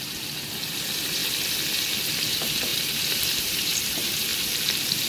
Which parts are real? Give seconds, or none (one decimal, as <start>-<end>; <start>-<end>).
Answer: 1.2-2.3; 4.3-5.1

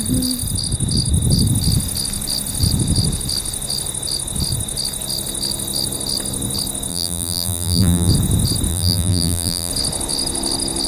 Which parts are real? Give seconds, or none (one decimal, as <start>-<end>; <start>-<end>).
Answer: 0.0-6.9; 8.1-8.7; 9.7-10.9